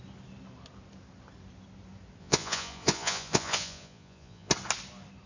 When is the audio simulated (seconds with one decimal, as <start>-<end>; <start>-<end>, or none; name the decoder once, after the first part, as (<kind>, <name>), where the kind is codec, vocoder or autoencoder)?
2.2-4.5 (vocoder, Vocos)